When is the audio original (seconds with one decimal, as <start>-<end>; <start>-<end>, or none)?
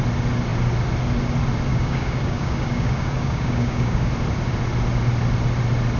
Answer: 0.0-1.7; 4.1-6.0